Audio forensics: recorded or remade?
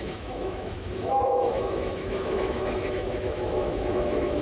remade